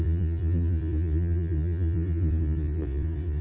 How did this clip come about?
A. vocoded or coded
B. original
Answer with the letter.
A